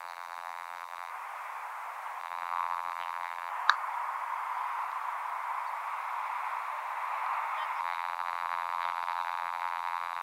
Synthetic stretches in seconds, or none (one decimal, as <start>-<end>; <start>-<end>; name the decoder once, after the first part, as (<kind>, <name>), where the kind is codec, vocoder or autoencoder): 0.0-1.1 (vocoder, BigVGAN v2); 2.2-3.5; 7.8-10.2